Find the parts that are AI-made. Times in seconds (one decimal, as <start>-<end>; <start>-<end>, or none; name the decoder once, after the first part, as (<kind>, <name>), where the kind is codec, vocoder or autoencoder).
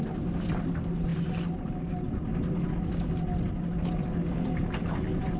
none